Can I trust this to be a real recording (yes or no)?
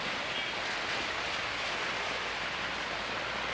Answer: yes